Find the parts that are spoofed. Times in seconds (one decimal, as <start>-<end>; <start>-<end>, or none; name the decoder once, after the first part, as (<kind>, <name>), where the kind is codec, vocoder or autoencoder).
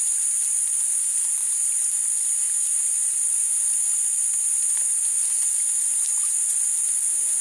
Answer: none